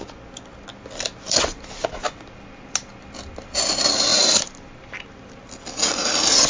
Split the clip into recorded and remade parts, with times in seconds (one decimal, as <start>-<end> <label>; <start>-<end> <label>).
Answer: 0.0-4.1 recorded; 4.1-5.5 remade; 5.5-6.5 recorded